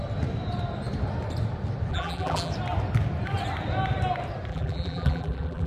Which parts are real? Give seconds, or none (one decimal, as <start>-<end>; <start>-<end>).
0.0-1.9; 2.5-4.5